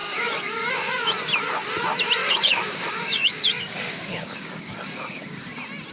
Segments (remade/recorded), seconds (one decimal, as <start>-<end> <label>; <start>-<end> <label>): 0.0-0.7 remade; 0.7-2.2 recorded; 2.2-5.5 remade; 5.5-5.9 recorded